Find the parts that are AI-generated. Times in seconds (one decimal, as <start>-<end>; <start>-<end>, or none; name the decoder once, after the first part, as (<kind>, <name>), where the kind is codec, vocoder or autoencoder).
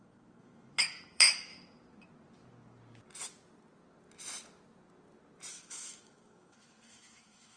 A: 0.0-1.5 (autoencoder, DAC-VAE); 5.5-7.6